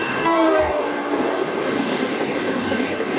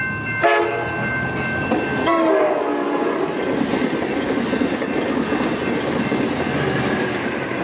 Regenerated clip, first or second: first